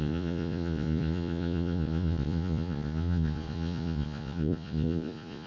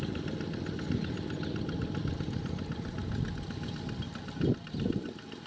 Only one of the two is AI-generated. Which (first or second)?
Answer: first